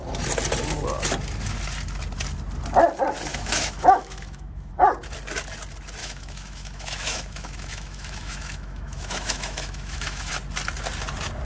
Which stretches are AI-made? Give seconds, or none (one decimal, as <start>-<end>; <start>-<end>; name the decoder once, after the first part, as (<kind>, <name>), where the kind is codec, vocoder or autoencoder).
3.3-4.7 (autoencoder, DAC-VAE); 6.0-10.3